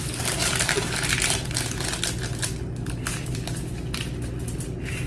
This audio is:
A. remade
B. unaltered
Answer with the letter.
B